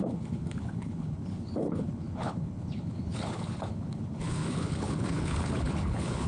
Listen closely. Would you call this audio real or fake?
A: fake